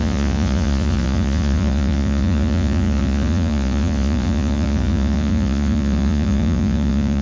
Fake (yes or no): yes